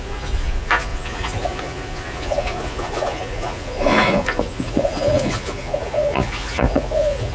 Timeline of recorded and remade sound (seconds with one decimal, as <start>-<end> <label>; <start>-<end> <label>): 0.0-7.3 remade